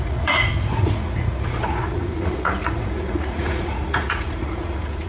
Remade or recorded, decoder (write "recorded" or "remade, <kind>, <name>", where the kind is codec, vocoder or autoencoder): remade, vocoder, Vocos